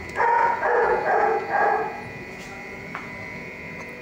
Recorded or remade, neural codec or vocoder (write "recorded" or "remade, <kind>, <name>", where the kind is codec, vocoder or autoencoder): remade, vocoder, Vocos